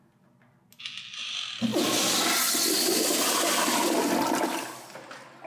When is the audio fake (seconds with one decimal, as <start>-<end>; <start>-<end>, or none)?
none